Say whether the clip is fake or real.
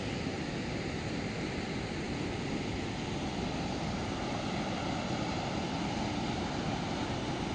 real